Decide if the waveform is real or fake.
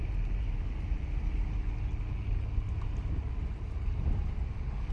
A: real